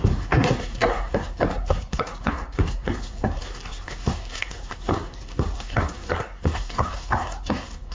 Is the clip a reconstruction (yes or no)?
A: yes